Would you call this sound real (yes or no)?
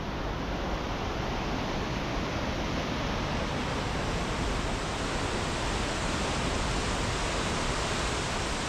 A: yes